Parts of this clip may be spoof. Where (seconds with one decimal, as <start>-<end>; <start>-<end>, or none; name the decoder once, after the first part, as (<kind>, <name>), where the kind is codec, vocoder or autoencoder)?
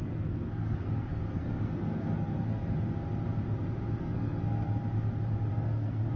0.0-2.6 (codec, SNAC); 4.0-4.8; 5.5-6.2